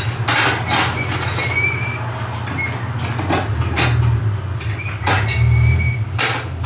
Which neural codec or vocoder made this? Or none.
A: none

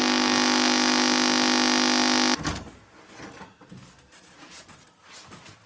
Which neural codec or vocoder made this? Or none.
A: none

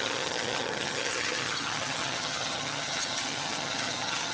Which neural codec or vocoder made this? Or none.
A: vocoder, HiFi-GAN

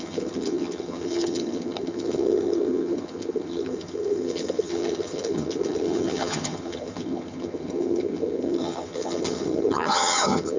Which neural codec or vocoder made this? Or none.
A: vocoder, HiFi-GAN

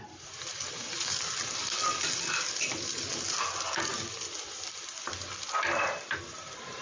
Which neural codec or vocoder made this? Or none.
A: none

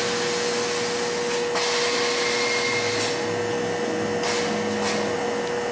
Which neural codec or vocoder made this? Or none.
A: none